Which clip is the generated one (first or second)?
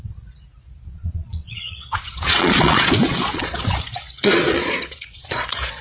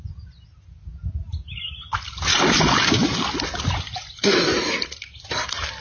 first